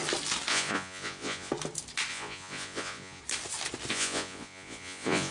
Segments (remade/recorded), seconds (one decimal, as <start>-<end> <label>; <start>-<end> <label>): 0.0-0.5 recorded; 0.5-1.5 remade; 1.5-2.1 recorded; 2.1-3.2 remade; 3.2-3.9 recorded; 3.9-5.3 remade